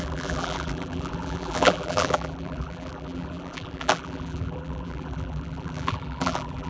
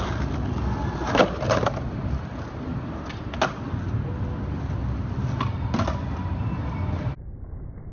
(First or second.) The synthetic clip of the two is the first